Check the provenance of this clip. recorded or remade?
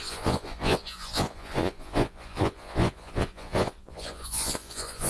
remade